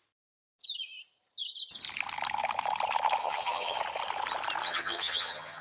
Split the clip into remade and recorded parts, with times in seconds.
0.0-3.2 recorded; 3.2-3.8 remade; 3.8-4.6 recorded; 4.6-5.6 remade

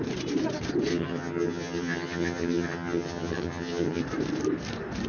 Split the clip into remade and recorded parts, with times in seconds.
0.0-0.9 recorded; 0.9-4.0 remade; 4.0-5.1 recorded

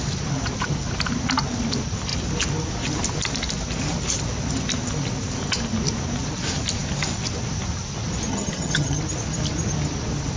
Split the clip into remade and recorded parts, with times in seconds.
0.0-8.3 recorded; 8.3-9.0 remade; 9.0-10.4 recorded

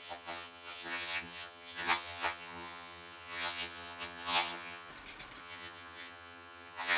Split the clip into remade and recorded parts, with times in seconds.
0.0-4.9 remade; 4.9-5.4 recorded; 5.4-7.0 remade

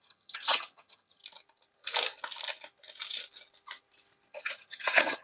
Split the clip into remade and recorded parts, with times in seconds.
0.0-1.2 remade; 1.2-4.3 recorded; 4.3-5.2 remade

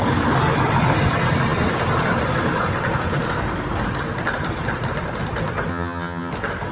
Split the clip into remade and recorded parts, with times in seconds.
0.0-5.7 recorded; 5.7-6.3 remade; 6.3-6.7 recorded

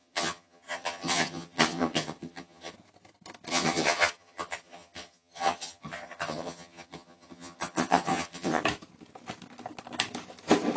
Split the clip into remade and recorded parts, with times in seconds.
0.0-2.7 remade; 2.7-3.5 recorded; 3.5-8.6 remade; 8.6-10.8 recorded

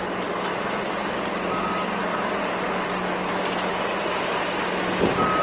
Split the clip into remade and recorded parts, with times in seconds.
0.0-5.4 recorded